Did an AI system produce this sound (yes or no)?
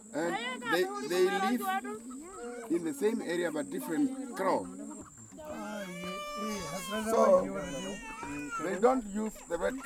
no